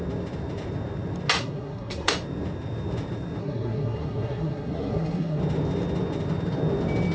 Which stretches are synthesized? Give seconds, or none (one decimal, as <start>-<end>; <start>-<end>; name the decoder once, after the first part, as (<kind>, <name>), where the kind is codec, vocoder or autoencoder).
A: 1.4-2.1 (codec, SNAC); 3.4-5.4